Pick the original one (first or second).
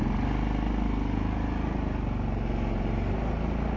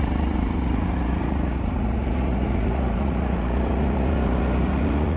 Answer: first